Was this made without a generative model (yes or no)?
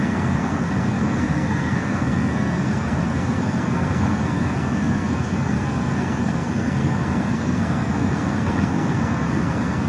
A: no